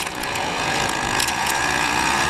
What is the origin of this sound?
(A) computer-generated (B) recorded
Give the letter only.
A